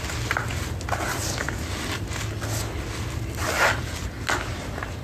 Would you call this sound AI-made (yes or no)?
no